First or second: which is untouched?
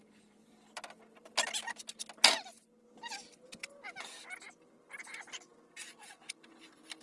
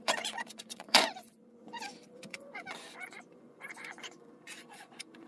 first